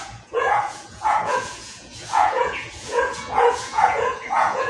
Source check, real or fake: fake